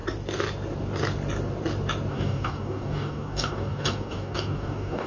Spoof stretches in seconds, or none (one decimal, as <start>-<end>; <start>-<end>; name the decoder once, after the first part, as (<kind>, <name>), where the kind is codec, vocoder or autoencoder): 2.1-5.1 (codec, DAC)